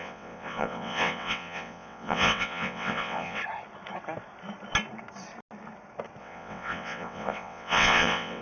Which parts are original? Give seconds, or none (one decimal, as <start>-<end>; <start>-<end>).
3.4-6.2